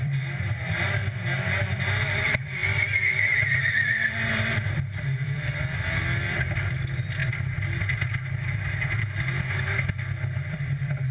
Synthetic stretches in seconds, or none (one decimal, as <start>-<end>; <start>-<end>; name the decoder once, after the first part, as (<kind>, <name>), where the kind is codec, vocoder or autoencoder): 0.0-1.0 (vocoder, BigVGAN v2); 1.6-7.2; 10.4-11.1